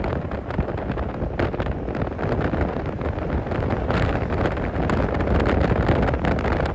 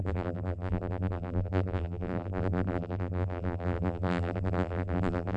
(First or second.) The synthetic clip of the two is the second